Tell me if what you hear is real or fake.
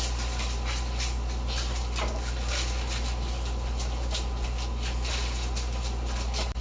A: real